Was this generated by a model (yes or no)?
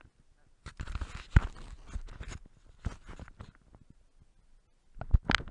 no